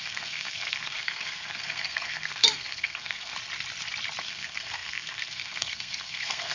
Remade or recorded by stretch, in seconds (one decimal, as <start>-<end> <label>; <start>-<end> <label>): 0.0-3.3 remade; 3.3-4.2 recorded; 4.2-6.5 remade